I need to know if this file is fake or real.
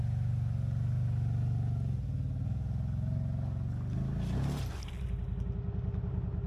real